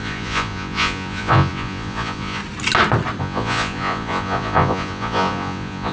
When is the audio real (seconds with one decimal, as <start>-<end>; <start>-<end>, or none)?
2.4-3.2